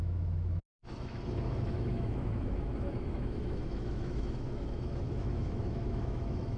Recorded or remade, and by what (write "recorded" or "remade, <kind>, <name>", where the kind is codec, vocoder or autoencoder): remade, autoencoder, DAC-VAE